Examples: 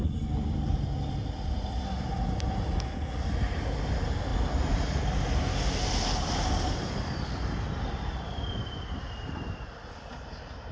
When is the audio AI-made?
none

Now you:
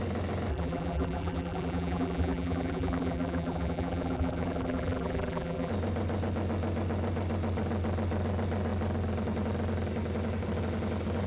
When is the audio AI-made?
0.5-5.7 (vocoder, BigVGAN v2)

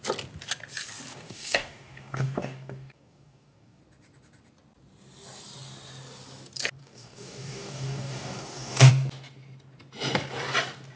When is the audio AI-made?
1.1-3.8 (codec, DAC); 6.8-8.9

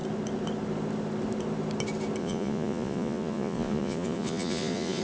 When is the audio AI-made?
2.2-5.0 (vocoder, Vocos)

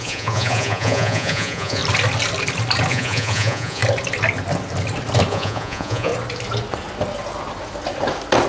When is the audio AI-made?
0.0-1.8 (vocoder, Vocos); 2.9-3.8; 5.3-6.1

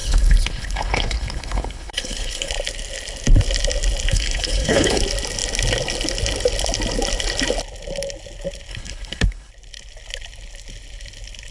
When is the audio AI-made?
0.0-2.5 (codec, HILCodec); 4.1-5.0; 8.7-9.5

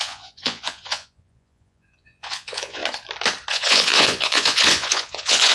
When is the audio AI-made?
0.0-2.8 (vocoder, Vocos); 3.5-5.5

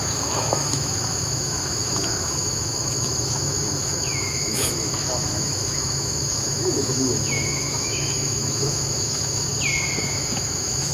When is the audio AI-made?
0.0-9.5 (autoencoder, DAC-VAE); 10.0-10.9